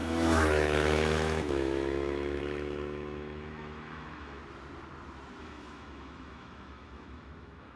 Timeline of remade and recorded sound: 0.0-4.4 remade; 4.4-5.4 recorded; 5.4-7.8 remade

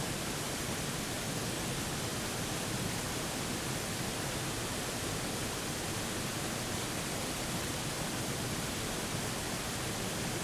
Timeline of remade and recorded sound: 0.0-10.4 recorded

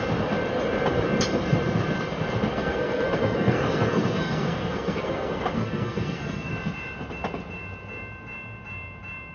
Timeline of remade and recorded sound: 0.0-2.5 recorded; 2.5-6.5 remade; 6.5-9.3 recorded

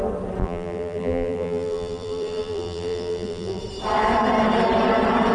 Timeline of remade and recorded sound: 0.0-0.4 recorded; 0.4-3.6 remade; 3.6-5.3 recorded

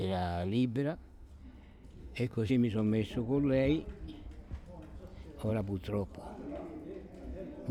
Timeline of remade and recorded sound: 0.0-1.3 remade; 1.3-2.0 recorded; 2.0-2.5 remade; 2.5-7.7 recorded

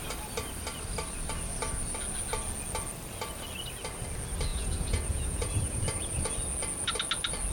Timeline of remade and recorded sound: 0.0-4.5 recorded; 4.5-6.3 remade; 6.3-7.5 recorded

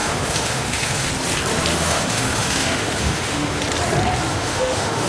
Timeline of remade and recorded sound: 0.0-1.1 remade; 1.1-1.7 recorded; 1.7-3.6 remade; 3.6-4.3 recorded; 4.3-5.1 remade